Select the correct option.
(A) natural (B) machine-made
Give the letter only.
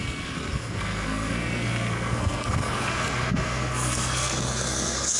B